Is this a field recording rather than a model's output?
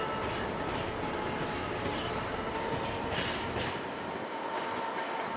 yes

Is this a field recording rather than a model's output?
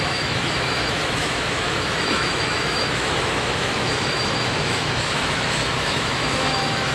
no